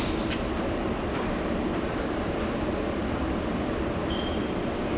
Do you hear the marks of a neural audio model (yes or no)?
no